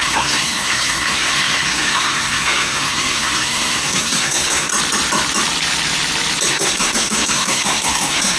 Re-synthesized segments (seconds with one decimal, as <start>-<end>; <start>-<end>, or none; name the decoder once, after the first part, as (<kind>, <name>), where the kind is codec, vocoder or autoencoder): 0.0-4.7 (codec, SNAC); 6.5-8.4